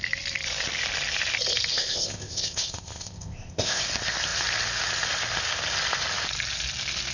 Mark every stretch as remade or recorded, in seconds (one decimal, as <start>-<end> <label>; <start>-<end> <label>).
0.0-1.7 recorded; 1.7-3.8 remade; 3.8-7.1 recorded